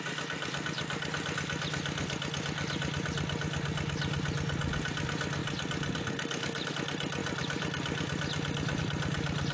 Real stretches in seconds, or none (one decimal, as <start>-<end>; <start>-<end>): 0.0-7.2; 8.8-9.5

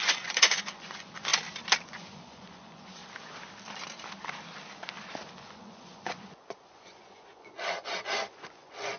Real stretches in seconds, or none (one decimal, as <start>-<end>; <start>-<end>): 1.3-1.8; 3.0-5.4

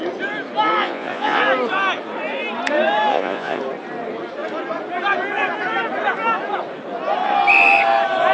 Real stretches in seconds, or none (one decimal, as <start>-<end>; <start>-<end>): 0.0-0.8; 1.4-3.1; 3.6-8.3

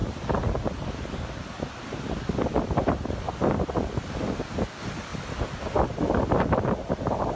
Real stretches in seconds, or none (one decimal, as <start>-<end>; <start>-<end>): 0.0-7.4

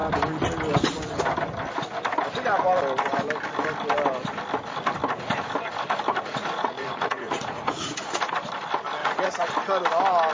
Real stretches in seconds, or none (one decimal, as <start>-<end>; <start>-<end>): 0.0-6.1; 8.3-9.0; 9.5-10.3

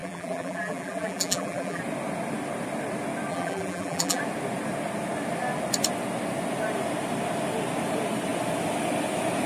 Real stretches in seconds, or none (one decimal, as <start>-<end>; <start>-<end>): 1.8-3.3; 4.2-9.5